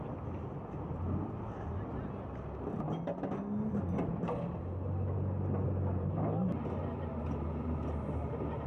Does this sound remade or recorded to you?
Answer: recorded